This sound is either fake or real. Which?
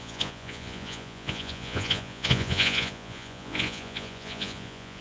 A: fake